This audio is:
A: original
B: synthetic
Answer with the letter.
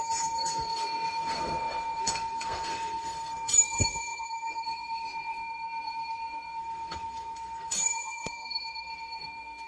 B